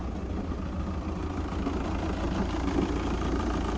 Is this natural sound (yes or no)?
yes